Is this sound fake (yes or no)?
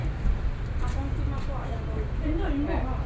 no